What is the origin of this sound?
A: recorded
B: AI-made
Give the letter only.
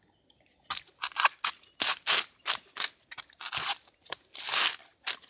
A